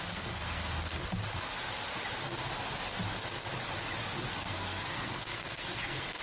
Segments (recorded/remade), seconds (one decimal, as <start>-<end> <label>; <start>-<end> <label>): 0.0-0.6 remade; 0.6-4.3 recorded; 4.3-6.2 remade